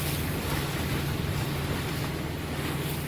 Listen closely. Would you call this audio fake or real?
real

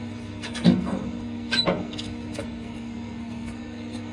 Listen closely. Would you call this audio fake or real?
fake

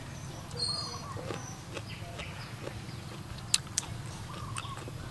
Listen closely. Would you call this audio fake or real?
real